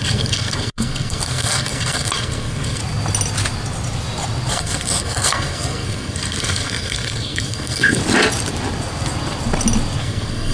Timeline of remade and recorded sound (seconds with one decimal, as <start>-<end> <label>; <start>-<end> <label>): 0.0-2.8 remade; 2.8-4.5 recorded; 4.5-8.0 remade; 8.0-10.0 recorded; 10.0-10.5 remade